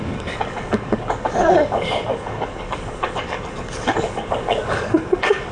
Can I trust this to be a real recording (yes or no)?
no